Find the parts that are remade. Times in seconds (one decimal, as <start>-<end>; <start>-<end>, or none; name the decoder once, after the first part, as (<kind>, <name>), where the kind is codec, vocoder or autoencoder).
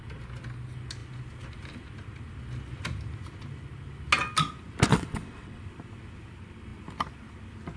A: 4.9-5.6 (vocoder, WaveNeXt)